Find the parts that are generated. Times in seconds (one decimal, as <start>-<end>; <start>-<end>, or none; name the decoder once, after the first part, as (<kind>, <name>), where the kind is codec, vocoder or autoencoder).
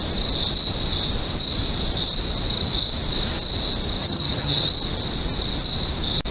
4.0-4.7 (vocoder, HiFi-GAN)